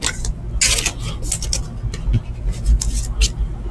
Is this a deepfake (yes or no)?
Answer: no